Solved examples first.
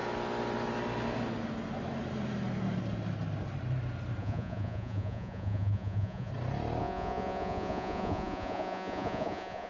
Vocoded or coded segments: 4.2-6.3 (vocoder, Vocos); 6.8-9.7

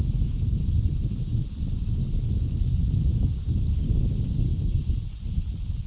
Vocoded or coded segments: 0.0-0.6 (codec, DAC); 3.1-4.5

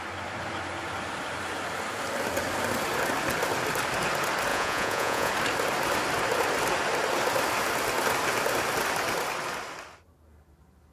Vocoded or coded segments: 4.5-5.3 (vocoder, Vocos)

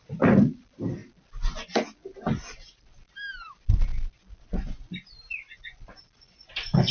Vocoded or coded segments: 0.0-1.0 (vocoder, BigVGAN v2); 3.5-3.9; 6.0-6.9